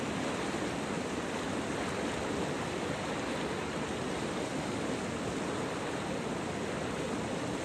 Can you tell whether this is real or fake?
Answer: real